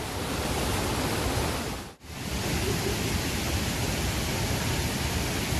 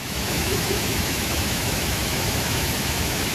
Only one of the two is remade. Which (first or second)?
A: second